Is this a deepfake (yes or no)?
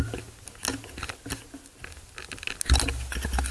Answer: no